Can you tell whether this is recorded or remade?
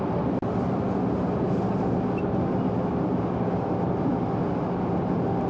recorded